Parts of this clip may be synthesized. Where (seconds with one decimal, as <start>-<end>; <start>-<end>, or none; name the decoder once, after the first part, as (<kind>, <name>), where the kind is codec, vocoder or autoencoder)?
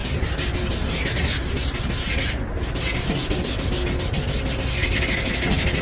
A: none